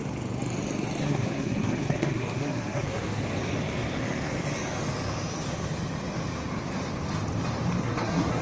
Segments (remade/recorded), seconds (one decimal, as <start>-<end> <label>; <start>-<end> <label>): 0.0-1.0 recorded; 1.0-3.2 remade; 3.2-7.8 recorded; 7.8-8.4 remade